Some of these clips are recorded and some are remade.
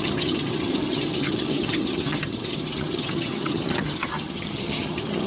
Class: remade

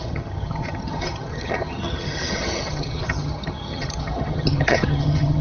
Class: remade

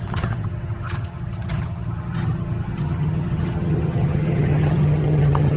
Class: remade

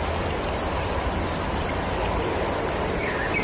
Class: recorded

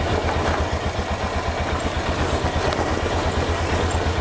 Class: recorded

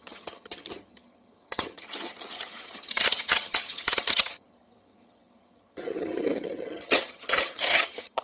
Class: remade